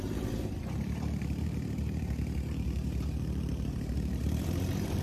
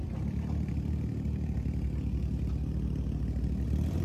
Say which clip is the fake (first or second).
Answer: first